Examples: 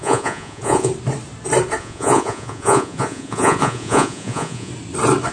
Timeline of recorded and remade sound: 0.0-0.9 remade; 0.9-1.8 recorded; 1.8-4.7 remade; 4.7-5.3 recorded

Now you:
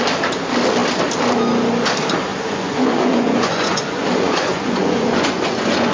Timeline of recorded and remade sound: 0.0-2.3 recorded; 2.3-5.9 remade